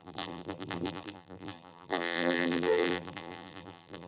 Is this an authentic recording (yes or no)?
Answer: no